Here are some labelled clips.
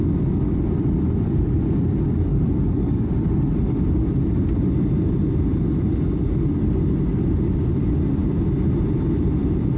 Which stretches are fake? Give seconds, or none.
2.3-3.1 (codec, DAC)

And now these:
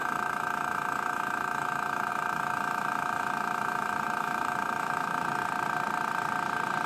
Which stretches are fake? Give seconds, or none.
0.0-5.4 (autoencoder, DAC-VAE)

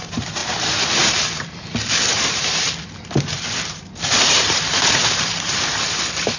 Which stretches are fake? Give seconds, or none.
0.0-0.4 (vocoder, BigVGAN v2); 2.8-6.4

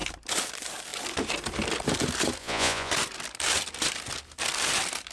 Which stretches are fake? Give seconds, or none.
2.4-2.9 (vocoder, Vocos)

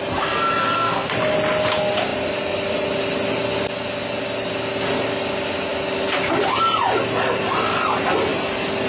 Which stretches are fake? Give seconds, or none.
0.6-1.1 (codec, SNAC)

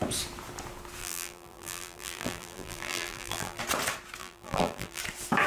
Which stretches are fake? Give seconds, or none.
1.0-3.6 (vocoder, BigVGAN v2); 4.2-5.0